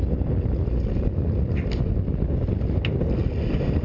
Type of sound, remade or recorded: recorded